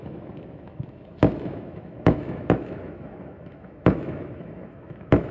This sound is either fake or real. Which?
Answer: fake